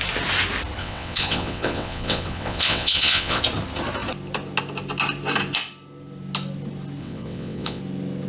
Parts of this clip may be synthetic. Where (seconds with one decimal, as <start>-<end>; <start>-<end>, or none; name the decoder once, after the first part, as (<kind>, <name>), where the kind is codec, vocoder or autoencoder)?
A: 0.8-3.4 (vocoder, WaveNeXt); 7.0-7.8